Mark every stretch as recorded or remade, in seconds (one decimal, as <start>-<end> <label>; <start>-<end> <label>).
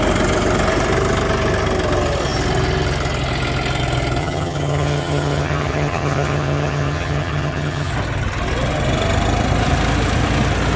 0.0-4.2 recorded; 4.2-7.9 remade; 7.9-10.8 recorded